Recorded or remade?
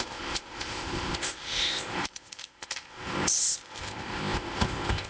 remade